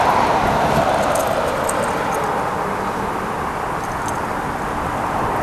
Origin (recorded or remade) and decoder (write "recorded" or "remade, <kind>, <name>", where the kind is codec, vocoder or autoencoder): recorded